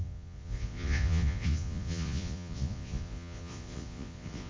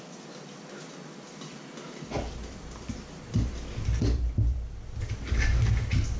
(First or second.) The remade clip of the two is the first